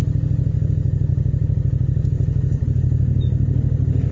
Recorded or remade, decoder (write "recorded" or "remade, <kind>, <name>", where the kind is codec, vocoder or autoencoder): recorded